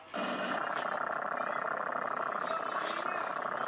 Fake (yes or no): no